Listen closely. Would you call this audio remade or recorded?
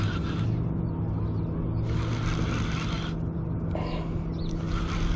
recorded